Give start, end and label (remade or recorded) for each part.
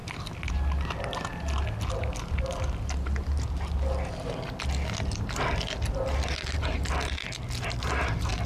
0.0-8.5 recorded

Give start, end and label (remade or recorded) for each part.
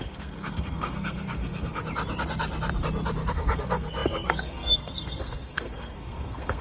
0.0-1.8 remade; 1.8-3.3 recorded; 3.3-6.6 remade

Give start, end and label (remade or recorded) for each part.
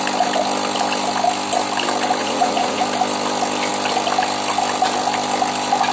0.0-2.2 recorded; 2.2-2.8 remade; 2.8-5.9 recorded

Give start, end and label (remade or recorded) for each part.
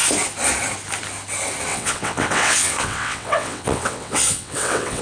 0.0-1.7 recorded; 1.7-5.0 remade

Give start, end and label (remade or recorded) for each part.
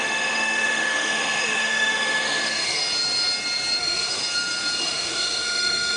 0.0-2.8 remade; 2.8-3.8 recorded; 3.8-4.2 remade; 4.2-4.8 recorded; 4.8-6.0 remade